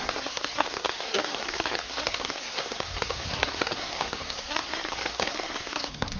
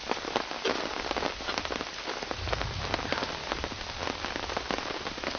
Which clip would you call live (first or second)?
second